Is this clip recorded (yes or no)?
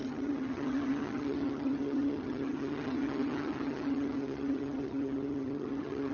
no